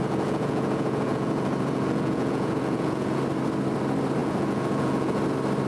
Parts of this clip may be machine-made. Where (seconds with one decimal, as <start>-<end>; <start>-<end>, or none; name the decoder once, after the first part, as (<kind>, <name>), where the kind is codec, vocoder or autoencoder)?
0.0-3.2 (vocoder, Vocos); 4.2-5.2

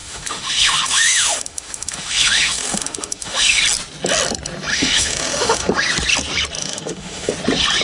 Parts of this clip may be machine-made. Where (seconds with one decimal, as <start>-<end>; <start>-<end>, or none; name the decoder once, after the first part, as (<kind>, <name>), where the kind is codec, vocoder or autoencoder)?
0.0-3.6 (autoencoder, DAC-VAE); 4.7-5.7; 6.6-7.3

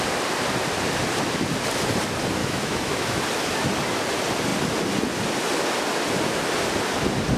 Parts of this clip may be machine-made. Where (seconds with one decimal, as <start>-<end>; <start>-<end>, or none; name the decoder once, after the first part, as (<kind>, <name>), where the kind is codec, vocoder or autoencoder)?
2.4-3.2 (autoencoder, DAC-VAE)

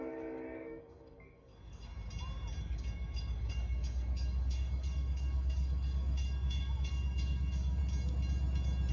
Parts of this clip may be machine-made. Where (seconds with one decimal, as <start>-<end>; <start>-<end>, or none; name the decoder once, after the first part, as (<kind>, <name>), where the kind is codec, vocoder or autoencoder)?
0.0-1.9 (codec, DAC); 2.6-7.8

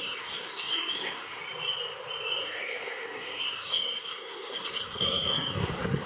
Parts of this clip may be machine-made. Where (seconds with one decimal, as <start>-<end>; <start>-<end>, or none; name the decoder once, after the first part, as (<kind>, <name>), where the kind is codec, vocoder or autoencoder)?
0.0-1.4 (codec, SNAC); 2.4-6.1

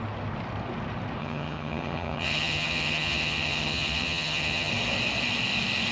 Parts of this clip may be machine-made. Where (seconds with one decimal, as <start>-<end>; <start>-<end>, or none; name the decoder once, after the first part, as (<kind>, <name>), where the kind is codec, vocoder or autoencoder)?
1.2-4.7 (vocoder, HiFi-GAN)

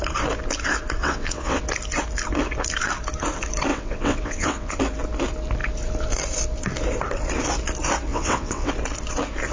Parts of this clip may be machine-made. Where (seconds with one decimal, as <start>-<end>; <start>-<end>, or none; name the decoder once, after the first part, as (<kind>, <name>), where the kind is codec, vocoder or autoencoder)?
1.0-1.6 (vocoder, WaveNeXt); 3.7-4.8; 8.1-8.7